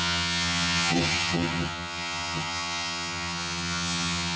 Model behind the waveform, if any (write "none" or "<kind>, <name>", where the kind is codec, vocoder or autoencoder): vocoder, HiFi-GAN